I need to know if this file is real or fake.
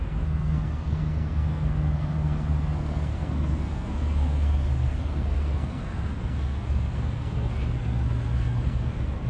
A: fake